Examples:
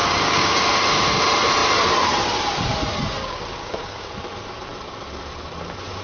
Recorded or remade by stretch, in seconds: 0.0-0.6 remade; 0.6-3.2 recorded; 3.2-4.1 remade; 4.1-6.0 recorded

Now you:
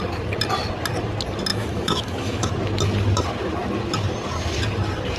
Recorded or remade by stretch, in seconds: 0.0-1.5 recorded; 1.5-2.5 remade; 2.5-5.2 recorded

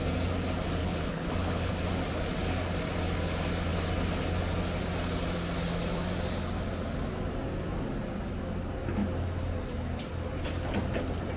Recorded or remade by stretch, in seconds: 0.0-0.8 recorded; 0.8-1.7 remade; 1.7-11.4 recorded

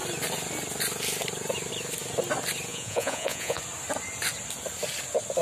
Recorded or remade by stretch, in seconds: 0.0-2.7 recorded; 2.7-3.6 remade; 3.6-5.4 recorded

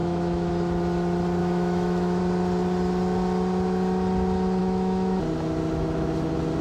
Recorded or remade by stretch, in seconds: 0.0-0.5 remade; 0.5-1.4 recorded; 1.4-2.2 remade; 2.2-4.6 recorded; 4.6-5.2 remade; 5.2-6.6 recorded

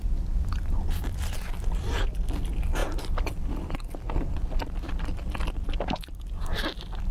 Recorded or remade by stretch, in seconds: 0.0-7.1 recorded

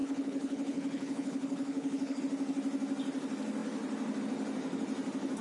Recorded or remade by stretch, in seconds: 0.0-2.2 remade; 2.2-5.4 recorded